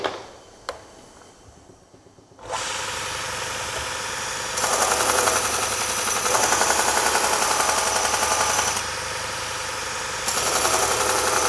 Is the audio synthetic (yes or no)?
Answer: no